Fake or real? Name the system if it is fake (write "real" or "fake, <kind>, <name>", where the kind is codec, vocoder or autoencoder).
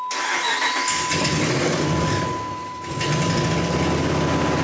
real